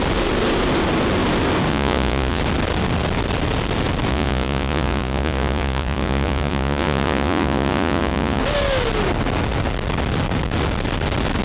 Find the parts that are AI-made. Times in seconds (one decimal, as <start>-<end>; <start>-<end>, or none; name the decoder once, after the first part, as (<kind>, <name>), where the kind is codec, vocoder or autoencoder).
1.7-2.4 (vocoder, Vocos); 4.1-8.4